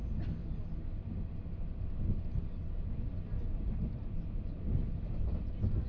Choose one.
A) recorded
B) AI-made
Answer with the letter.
A